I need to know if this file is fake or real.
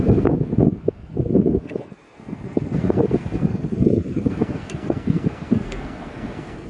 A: fake